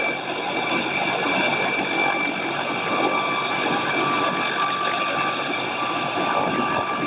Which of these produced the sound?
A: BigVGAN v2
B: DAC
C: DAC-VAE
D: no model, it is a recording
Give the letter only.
D